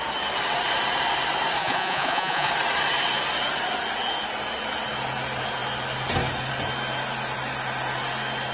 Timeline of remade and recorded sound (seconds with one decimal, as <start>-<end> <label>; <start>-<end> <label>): 0.0-1.6 recorded; 1.6-2.5 remade; 2.5-8.5 recorded